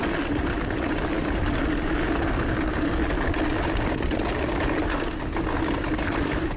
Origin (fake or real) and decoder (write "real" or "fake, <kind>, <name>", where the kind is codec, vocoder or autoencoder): real